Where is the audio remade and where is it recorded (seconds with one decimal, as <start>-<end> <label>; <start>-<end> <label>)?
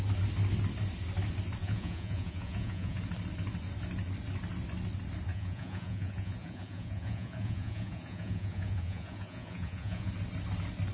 0.0-1.6 recorded; 1.6-3.0 remade; 3.0-5.3 recorded; 5.3-10.1 remade; 10.1-10.9 recorded